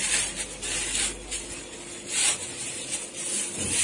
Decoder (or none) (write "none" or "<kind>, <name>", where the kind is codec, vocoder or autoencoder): none